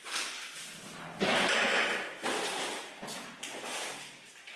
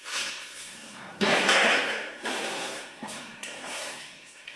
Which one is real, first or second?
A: first